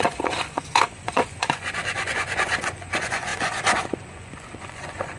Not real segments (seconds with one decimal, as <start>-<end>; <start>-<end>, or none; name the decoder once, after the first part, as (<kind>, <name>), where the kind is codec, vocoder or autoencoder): 0.0-5.2 (vocoder, Vocos)